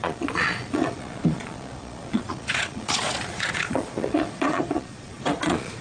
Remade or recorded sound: remade